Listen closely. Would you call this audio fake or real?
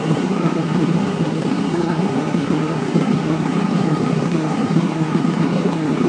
fake